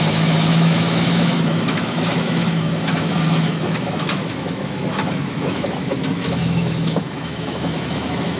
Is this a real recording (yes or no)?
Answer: no